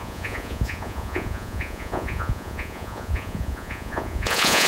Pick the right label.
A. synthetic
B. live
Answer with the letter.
A